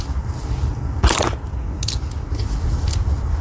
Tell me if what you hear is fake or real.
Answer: real